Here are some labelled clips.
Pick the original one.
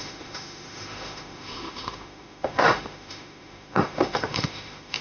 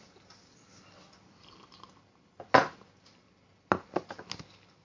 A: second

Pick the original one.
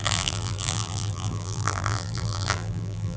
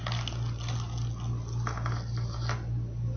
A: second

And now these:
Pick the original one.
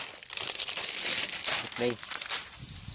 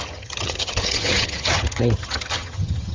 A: first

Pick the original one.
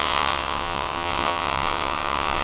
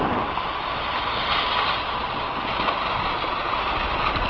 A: second